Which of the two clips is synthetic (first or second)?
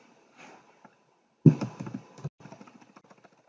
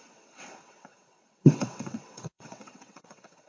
second